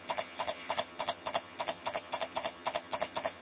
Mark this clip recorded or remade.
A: remade